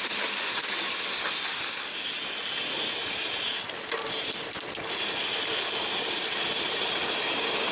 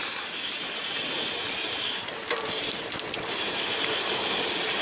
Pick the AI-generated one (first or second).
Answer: second